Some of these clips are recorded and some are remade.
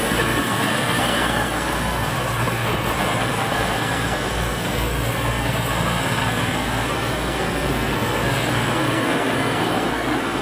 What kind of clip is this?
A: remade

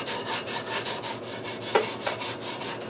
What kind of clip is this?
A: recorded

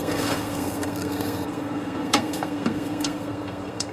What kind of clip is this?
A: remade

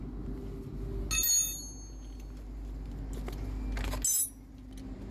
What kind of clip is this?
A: recorded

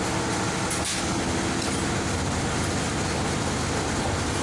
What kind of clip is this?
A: recorded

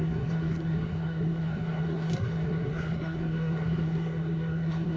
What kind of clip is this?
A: remade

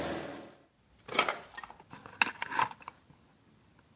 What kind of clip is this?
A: recorded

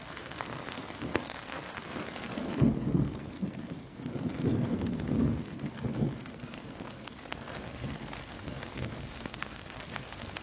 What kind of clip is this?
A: remade